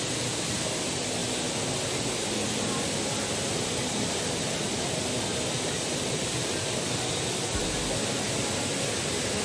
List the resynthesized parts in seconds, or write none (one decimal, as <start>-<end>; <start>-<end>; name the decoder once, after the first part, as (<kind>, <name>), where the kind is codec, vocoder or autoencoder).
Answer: none